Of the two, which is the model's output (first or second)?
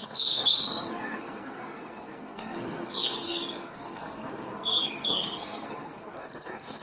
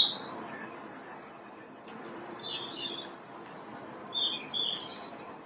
first